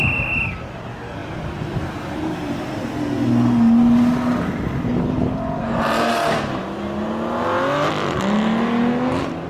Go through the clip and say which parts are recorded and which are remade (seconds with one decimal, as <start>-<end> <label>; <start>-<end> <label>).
0.0-9.5 recorded